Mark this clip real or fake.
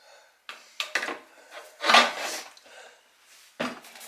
real